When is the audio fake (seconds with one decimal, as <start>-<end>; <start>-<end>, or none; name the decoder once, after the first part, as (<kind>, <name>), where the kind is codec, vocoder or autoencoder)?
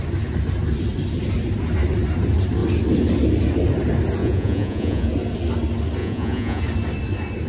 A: 4.2-5.1 (vocoder, Vocos); 6.0-6.6